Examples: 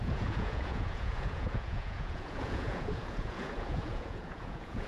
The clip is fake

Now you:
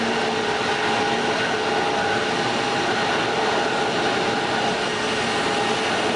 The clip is real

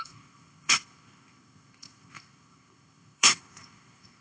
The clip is fake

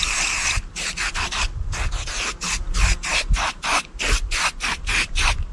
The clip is real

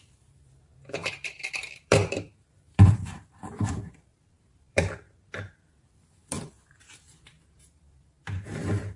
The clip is fake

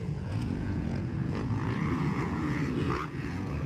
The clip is fake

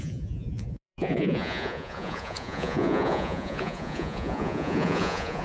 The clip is fake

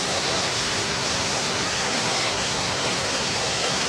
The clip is fake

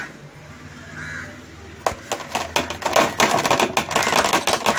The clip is real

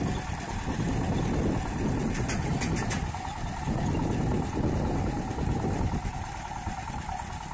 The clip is real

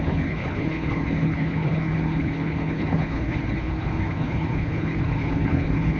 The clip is fake